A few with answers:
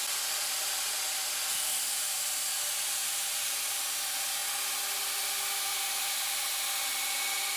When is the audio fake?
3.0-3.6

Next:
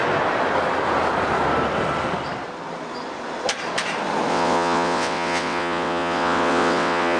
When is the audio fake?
4.3-7.2

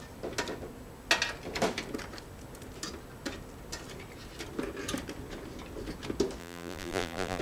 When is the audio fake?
6.4-7.4

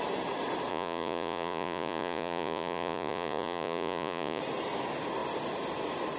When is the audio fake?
0.7-4.4

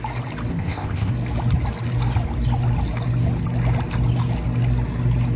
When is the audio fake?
0.5-1.1

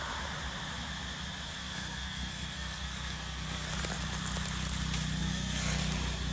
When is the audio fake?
1.6-3.7; 5.2-5.8

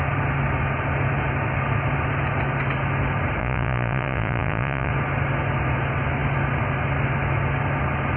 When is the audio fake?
3.4-4.9